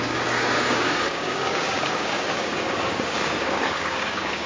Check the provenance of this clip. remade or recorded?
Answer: remade